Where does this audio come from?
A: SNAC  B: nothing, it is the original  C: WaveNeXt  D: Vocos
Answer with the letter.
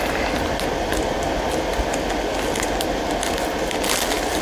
B